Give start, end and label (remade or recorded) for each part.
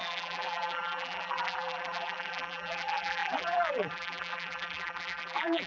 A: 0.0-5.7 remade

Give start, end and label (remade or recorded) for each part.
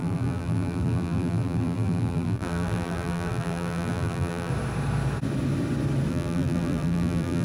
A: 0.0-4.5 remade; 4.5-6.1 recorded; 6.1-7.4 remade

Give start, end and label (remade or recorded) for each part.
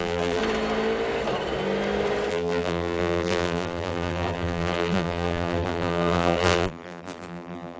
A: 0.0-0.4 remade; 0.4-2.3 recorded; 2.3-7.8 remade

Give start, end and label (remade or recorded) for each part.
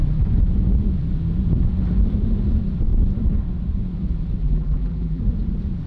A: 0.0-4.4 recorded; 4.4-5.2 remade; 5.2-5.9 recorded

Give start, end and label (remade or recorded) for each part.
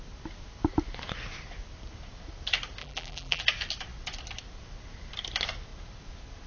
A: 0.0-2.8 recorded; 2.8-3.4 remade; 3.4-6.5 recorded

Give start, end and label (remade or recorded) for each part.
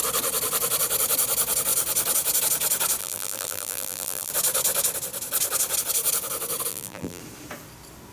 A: 0.0-3.0 recorded; 3.0-4.3 remade; 4.3-6.7 recorded; 6.7-7.2 remade; 7.2-8.1 recorded